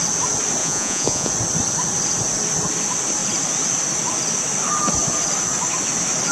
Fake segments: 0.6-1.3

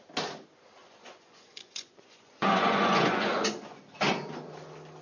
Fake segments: 0.8-3.8

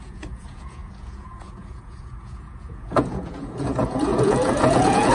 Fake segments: 0.0-5.1

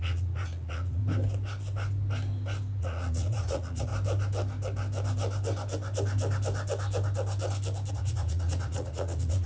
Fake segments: 0.0-1.0; 2.8-3.9; 7.9-9.5